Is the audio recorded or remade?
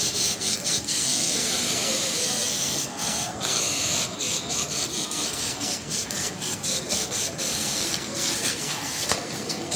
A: remade